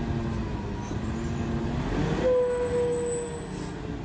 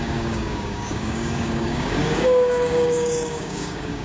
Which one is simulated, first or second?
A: second